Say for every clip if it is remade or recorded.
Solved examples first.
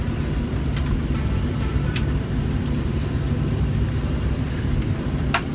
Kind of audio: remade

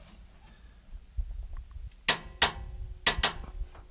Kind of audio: recorded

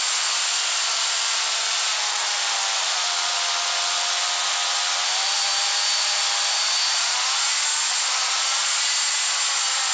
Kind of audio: recorded